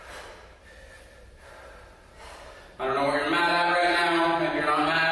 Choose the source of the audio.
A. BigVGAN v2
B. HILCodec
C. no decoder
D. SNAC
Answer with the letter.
C